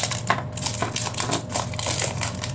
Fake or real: real